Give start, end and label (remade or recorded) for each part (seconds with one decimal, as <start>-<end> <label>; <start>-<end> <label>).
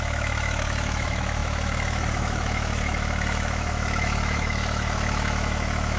0.0-6.0 remade